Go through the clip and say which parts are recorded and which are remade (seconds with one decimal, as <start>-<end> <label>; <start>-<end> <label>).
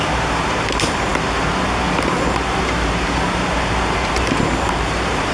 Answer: 0.0-5.3 remade